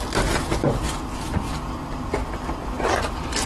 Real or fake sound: real